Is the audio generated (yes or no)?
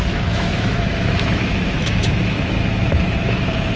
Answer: yes